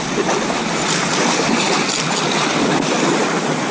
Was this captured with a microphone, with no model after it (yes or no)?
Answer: yes